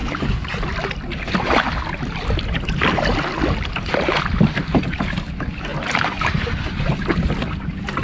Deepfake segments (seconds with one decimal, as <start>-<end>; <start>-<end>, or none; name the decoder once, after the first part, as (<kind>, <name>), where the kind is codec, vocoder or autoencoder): none